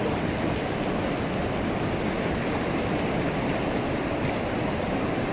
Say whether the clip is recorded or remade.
recorded